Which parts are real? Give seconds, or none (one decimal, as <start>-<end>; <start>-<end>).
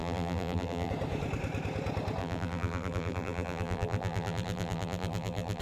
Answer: 0.9-2.2